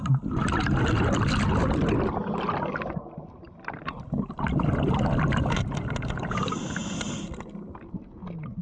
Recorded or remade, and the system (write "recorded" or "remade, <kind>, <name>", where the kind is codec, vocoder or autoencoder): recorded